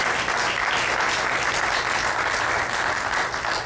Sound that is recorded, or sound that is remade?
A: recorded